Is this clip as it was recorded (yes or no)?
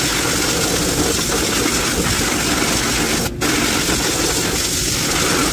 yes